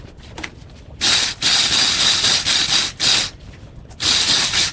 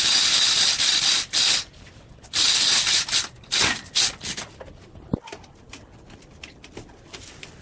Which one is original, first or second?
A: second